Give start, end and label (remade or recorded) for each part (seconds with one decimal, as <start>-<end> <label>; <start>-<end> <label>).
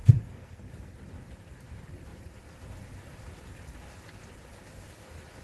0.0-1.0 remade; 1.0-5.4 recorded